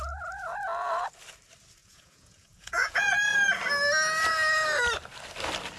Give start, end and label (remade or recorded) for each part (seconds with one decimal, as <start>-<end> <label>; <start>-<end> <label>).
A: 0.0-1.8 recorded; 1.8-3.1 remade; 3.1-5.8 recorded